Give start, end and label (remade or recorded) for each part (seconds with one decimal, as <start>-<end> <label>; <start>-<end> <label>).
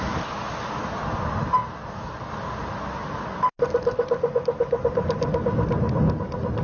0.0-6.6 recorded